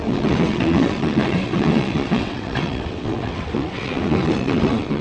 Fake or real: fake